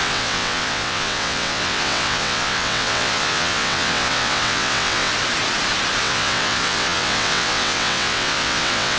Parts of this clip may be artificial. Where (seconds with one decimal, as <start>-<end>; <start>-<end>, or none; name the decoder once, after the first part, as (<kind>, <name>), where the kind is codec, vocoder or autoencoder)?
0.0-5.1 (vocoder, WaveNeXt); 6.0-9.0